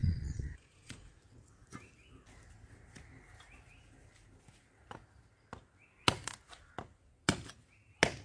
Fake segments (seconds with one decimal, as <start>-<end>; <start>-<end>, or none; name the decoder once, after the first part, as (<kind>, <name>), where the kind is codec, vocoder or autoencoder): 0.0-1.2 (vocoder, Vocos)